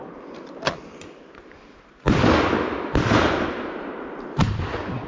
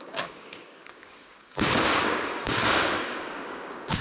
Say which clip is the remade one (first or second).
second